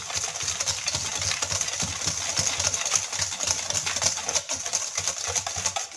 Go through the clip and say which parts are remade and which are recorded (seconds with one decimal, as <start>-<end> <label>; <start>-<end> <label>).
0.0-6.0 recorded